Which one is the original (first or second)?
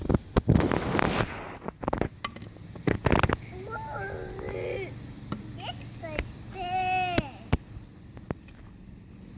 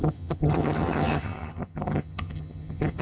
first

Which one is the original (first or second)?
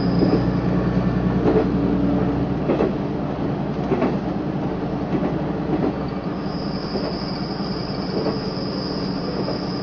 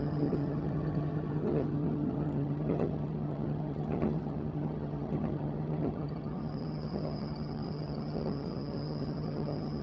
first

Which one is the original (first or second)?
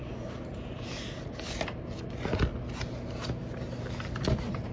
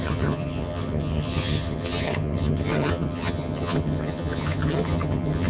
first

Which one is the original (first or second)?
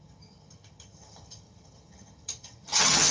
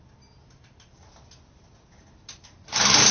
second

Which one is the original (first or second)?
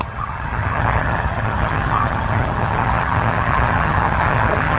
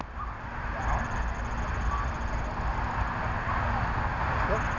second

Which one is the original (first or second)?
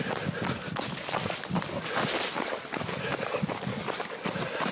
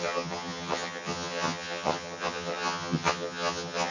first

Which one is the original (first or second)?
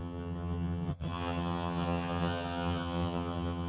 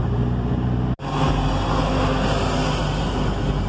second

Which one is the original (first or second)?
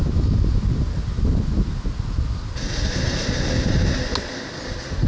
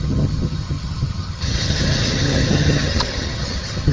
first